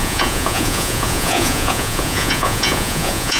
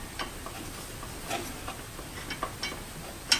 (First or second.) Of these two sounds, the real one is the second